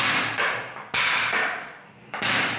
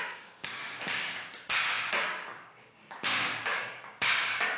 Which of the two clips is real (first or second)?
first